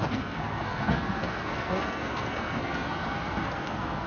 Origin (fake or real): fake